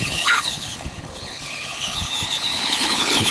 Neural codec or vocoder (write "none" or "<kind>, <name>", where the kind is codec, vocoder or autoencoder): codec, HILCodec